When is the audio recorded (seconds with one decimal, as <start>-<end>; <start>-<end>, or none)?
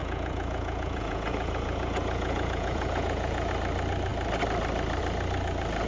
3.5-5.9